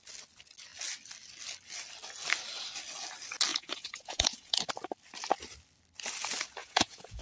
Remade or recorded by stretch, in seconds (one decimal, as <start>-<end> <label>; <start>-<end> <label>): 0.0-3.5 recorded; 3.5-4.7 remade; 4.7-6.6 recorded; 6.6-7.2 remade